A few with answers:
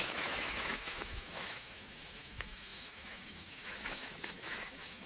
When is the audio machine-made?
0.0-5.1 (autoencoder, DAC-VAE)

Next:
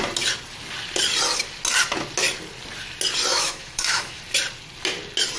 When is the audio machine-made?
3.3-4.2 (autoencoder, DAC-VAE)

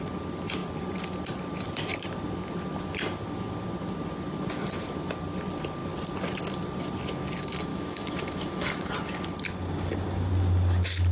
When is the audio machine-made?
7.7-8.9 (autoencoder, DAC-VAE)

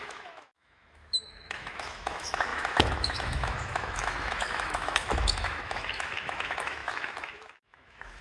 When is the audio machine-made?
0.0-8.2 (autoencoder, DAC-VAE)

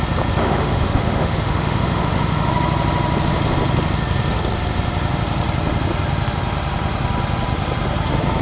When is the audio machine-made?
0.4-2.5 (autoencoder, DAC-VAE)

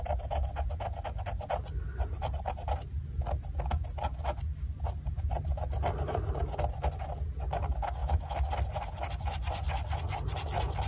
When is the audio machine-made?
8.0-8.5 (autoencoder, DAC-VAE)

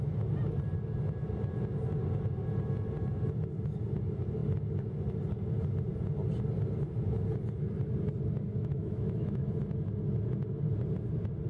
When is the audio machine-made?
8.5-9.5 (autoencoder, DAC-VAE)

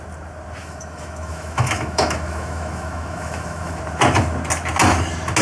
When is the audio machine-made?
0.6-3.8 (autoencoder, DAC-VAE)